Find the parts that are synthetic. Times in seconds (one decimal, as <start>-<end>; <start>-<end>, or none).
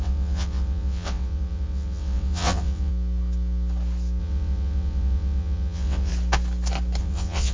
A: 0.0-2.9; 4.2-6.1; 7.0-7.5